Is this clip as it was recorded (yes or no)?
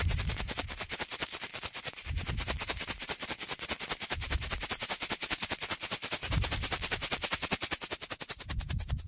no